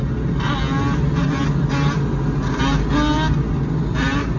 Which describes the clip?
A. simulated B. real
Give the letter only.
B